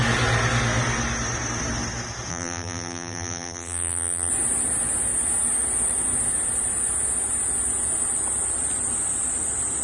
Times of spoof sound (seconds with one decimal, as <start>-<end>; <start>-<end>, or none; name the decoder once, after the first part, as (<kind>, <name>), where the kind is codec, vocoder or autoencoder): 2.3-4.3 (vocoder, BigVGAN v2)